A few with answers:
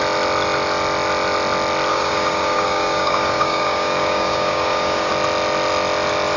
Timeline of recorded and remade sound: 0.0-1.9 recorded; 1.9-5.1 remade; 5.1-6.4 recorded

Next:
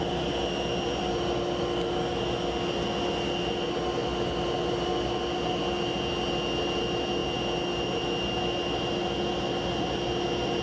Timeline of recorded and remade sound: 0.0-10.6 recorded

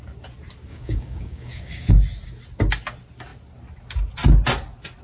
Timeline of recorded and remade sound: 0.0-0.7 recorded; 0.7-1.9 remade; 1.9-5.0 recorded

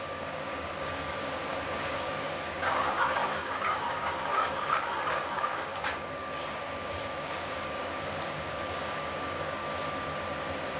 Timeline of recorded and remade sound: 0.0-9.6 remade; 9.6-10.8 recorded

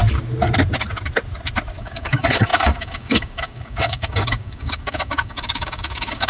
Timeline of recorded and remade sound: 0.0-1.8 recorded; 1.8-6.3 remade

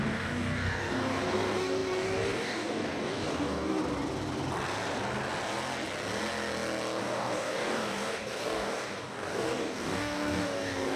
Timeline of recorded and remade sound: 0.0-3.8 remade; 3.8-7.0 recorded; 7.0-11.0 remade

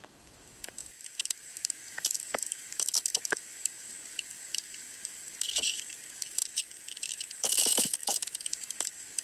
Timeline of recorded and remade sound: 0.0-9.2 remade